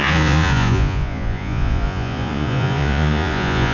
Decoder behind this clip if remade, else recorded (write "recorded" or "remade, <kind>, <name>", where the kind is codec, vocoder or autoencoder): remade, vocoder, Vocos